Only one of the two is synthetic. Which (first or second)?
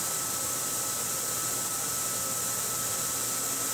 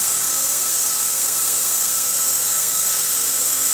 second